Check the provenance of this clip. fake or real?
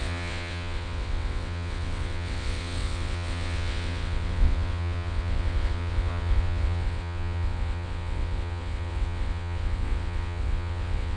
fake